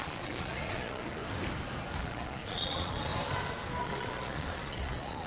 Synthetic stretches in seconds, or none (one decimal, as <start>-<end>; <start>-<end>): 0.0-1.2; 2.0-3.1; 3.8-5.3